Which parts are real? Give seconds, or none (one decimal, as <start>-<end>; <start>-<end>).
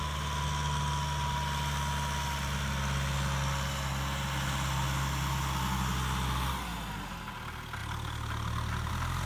0.0-9.3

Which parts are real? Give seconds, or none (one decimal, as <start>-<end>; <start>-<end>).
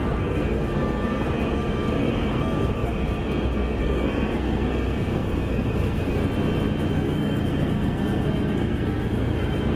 6.2-6.9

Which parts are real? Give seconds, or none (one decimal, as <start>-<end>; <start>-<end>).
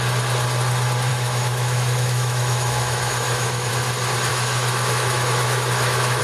0.0-1.1; 3.7-4.3